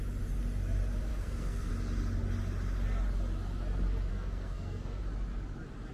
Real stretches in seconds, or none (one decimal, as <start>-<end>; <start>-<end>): 0.0-1.1; 1.7-4.1; 5.0-5.9